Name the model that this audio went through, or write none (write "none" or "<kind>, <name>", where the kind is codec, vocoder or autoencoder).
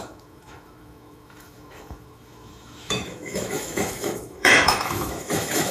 autoencoder, DAC-VAE